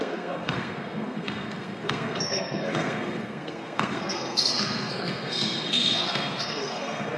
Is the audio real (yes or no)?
no